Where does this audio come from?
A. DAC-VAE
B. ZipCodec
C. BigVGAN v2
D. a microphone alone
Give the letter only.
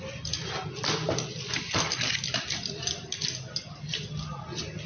D